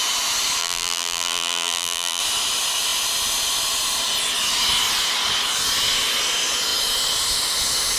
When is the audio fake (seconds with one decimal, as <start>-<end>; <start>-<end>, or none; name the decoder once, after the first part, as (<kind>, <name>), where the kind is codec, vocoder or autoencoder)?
0.6-2.2 (vocoder, BigVGAN v2)